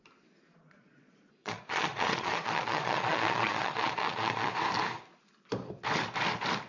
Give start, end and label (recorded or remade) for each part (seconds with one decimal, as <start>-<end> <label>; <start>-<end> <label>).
0.0-0.5 recorded; 0.5-4.5 remade; 4.5-6.7 recorded